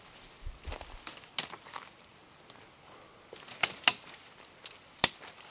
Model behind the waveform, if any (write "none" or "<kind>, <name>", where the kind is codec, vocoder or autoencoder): none